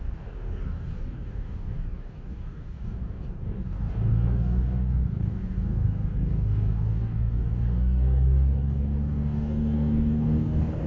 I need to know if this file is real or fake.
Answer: fake